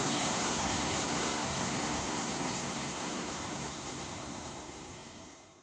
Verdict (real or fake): fake